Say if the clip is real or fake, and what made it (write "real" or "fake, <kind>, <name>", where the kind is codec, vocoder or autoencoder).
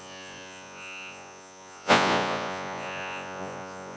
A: fake, vocoder, Vocos